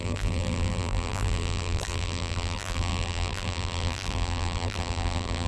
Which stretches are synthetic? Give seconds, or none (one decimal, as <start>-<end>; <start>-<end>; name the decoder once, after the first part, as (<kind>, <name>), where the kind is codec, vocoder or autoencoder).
0.0-5.5 (vocoder, BigVGAN v2)